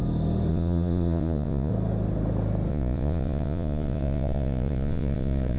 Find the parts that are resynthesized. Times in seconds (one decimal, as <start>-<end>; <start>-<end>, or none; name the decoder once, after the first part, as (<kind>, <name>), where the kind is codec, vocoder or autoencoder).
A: 0.5-1.7 (vocoder, Vocos); 2.7-5.6